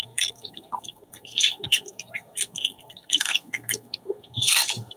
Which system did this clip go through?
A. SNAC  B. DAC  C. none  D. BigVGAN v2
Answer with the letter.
A